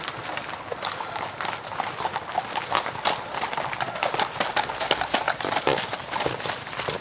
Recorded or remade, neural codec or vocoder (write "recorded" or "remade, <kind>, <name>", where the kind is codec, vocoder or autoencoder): recorded